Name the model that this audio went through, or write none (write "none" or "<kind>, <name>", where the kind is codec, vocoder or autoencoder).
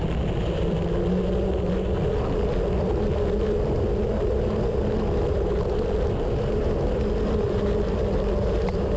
none